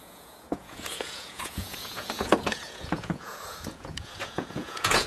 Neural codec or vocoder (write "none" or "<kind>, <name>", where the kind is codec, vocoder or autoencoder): vocoder, Vocos